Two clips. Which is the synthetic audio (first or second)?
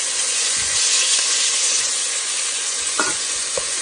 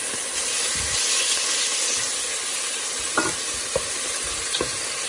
first